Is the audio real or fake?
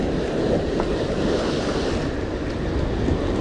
real